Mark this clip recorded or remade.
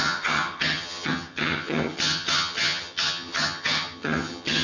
remade